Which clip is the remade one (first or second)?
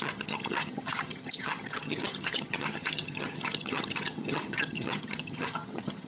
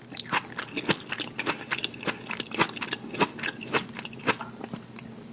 first